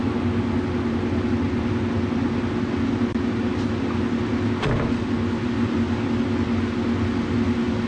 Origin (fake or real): real